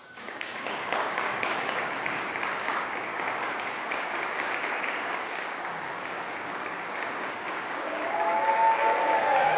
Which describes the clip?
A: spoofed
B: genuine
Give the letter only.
A